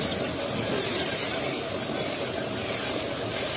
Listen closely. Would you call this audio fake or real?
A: real